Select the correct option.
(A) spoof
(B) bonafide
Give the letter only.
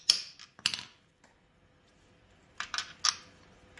B